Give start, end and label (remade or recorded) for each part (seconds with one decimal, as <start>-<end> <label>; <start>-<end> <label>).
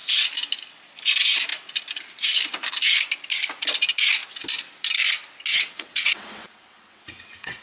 0.0-5.5 recorded; 5.5-7.6 remade